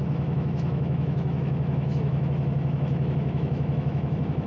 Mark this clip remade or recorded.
remade